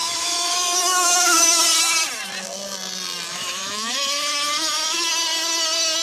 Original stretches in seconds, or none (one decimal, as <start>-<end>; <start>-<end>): 1.6-3.3; 5.1-6.0